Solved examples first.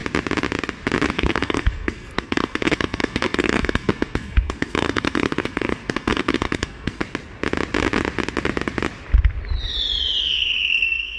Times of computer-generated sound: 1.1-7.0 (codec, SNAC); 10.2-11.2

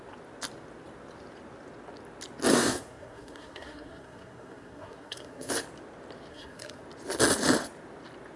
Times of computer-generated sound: 2.5-5.5 (codec, SNAC); 6.3-6.8